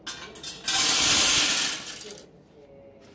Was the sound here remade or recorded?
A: recorded